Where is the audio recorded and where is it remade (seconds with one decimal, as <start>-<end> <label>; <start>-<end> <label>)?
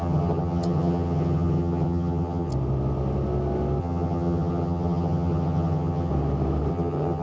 0.0-2.5 remade; 2.5-3.8 recorded; 3.8-6.1 remade; 6.1-6.7 recorded; 6.7-7.2 remade